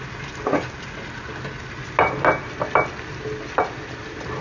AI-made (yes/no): no